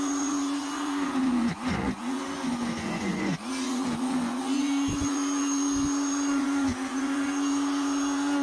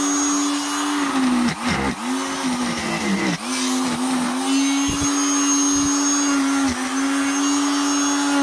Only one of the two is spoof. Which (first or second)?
first